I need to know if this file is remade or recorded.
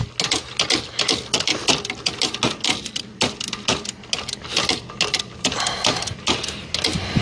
recorded